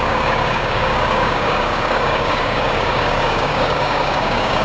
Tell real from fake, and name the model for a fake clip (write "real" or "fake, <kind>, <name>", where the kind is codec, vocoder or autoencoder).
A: fake, codec, DAC